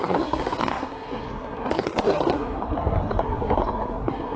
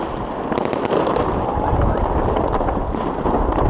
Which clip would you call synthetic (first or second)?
first